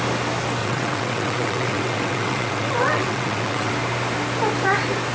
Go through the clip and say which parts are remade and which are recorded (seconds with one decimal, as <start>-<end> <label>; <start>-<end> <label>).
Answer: 0.0-0.6 recorded; 0.6-3.7 remade; 3.7-5.1 recorded